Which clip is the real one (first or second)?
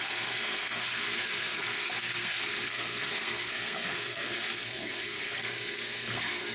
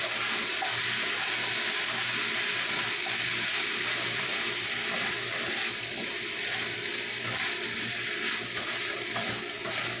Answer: second